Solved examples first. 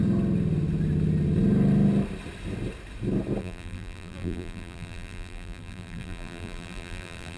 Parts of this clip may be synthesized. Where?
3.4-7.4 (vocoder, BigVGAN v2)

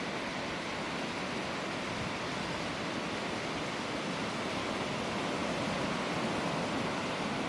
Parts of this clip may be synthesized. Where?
none

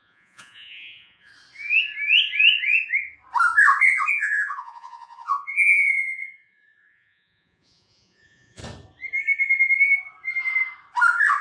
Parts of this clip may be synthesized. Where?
0.0-1.3 (vocoder, Vocos); 4.1-8.6

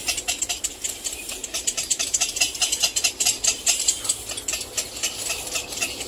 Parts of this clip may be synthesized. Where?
1.4-2.4 (vocoder, BigVGAN v2)

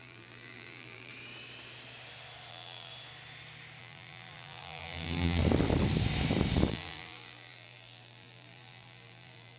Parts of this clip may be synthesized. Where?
0.0-1.1 (vocoder, BigVGAN v2); 2.5-2.9; 3.8-5.4; 6.7-9.6

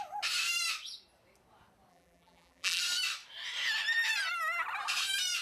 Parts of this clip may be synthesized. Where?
1.9-2.8 (vocoder, BigVGAN v2)

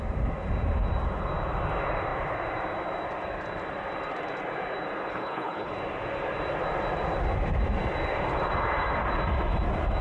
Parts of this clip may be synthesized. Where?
5.1-5.7 (codec, HILCodec)

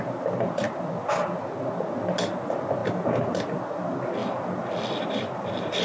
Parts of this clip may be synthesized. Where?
2.8-3.6 (vocoder, BigVGAN v2)